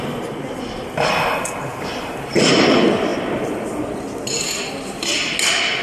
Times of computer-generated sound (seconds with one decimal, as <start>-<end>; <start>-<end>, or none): none